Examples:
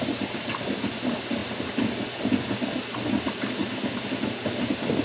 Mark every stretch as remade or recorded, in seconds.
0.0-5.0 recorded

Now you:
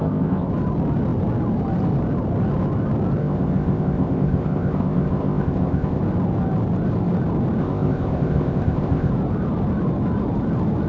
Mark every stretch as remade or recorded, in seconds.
0.0-0.5 remade; 0.5-3.2 recorded; 3.2-6.0 remade; 6.0-7.6 recorded; 7.6-9.1 remade; 9.1-10.9 recorded

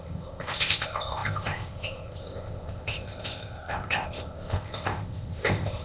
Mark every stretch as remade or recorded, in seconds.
0.0-5.8 remade

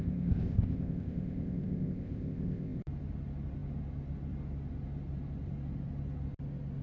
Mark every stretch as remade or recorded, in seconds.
0.0-2.8 remade; 2.8-6.8 recorded

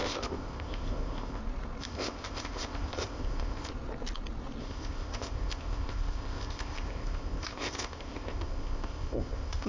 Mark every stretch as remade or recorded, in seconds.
0.0-1.4 remade; 1.4-1.8 recorded; 1.8-3.7 remade; 3.7-4.6 recorded; 4.6-9.7 remade

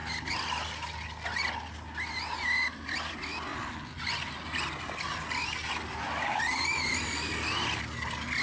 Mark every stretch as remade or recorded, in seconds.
0.0-8.4 recorded